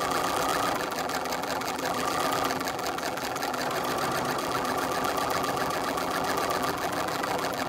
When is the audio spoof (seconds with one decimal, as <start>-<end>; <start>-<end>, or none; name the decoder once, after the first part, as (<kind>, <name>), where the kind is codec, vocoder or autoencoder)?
0.0-3.6 (vocoder, BigVGAN v2); 4.4-7.7

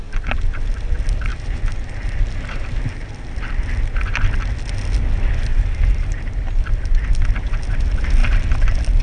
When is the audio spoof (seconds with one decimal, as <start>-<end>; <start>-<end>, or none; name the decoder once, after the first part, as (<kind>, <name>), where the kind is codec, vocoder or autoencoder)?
1.3-2.8 (vocoder, BigVGAN v2); 5.5-6.6

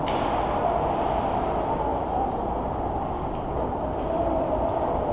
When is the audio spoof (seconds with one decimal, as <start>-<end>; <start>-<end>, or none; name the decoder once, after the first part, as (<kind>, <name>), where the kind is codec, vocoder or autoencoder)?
1.9-5.1 (vocoder, BigVGAN v2)

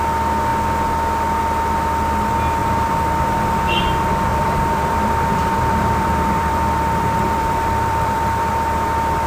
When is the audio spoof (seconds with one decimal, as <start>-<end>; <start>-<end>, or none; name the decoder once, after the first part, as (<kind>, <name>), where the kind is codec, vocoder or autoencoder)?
4.3-8.5 (vocoder, BigVGAN v2)

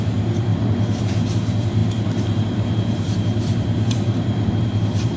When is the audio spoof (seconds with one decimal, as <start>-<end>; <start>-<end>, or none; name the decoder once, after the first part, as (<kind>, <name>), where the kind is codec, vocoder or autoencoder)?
0.0-0.5 (vocoder, BigVGAN v2); 1.0-5.2